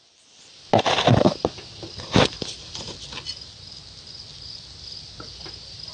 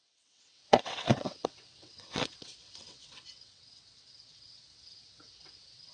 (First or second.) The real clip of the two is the first